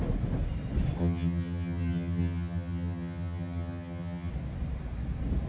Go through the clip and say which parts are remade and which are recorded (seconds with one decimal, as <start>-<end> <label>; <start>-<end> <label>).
0.0-1.0 recorded; 1.0-4.3 remade; 4.3-5.5 recorded